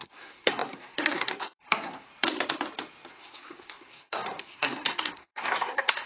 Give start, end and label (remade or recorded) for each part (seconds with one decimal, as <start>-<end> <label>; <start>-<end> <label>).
0.0-2.1 remade; 2.1-3.1 recorded; 3.1-6.1 remade